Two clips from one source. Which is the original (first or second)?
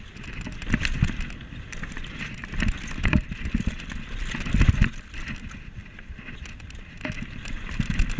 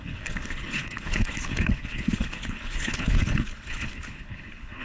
first